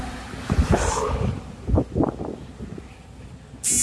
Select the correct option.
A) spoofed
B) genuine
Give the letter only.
B